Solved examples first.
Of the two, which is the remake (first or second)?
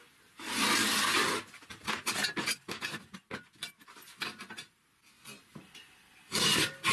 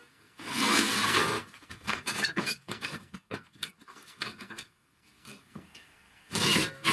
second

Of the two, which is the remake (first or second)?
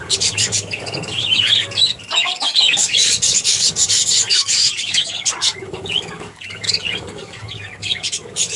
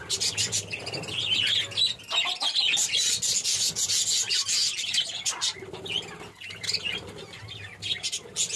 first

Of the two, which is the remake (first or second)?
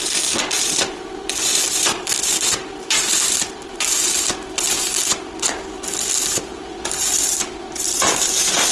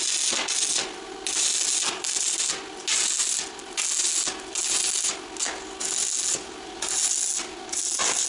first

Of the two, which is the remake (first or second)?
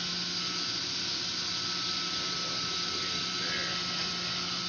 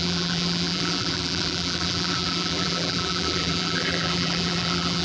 second